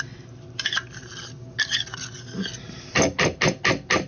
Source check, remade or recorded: recorded